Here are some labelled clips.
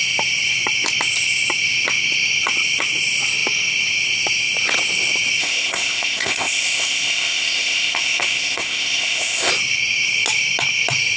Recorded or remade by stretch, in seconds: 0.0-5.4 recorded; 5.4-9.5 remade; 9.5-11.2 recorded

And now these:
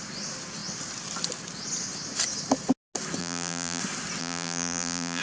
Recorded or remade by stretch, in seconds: 0.0-3.2 recorded; 3.2-3.8 remade; 3.8-4.2 recorded; 4.2-5.2 remade

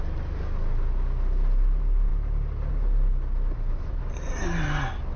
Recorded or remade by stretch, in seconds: 0.0-5.2 recorded

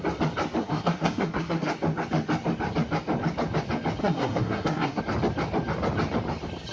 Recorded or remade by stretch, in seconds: 0.0-0.6 recorded; 0.6-1.7 remade; 1.7-4.0 recorded; 4.0-5.0 remade; 5.0-6.7 recorded

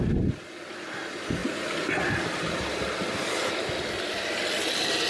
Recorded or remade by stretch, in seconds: 0.0-5.1 recorded

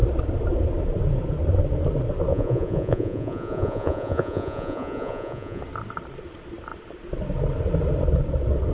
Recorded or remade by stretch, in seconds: 0.0-2.3 recorded; 2.3-5.6 remade; 5.6-8.7 recorded

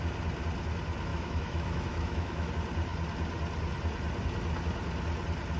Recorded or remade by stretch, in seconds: 0.0-1.1 recorded; 1.1-2.5 remade; 2.5-5.6 recorded

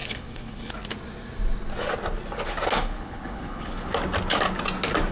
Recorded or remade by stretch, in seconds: 0.0-0.7 remade; 0.7-2.8 recorded; 2.8-3.9 remade; 3.9-5.1 recorded